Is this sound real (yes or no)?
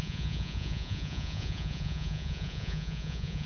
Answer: no